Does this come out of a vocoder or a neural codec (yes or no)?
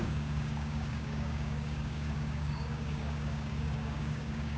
yes